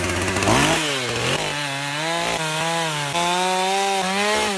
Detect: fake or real real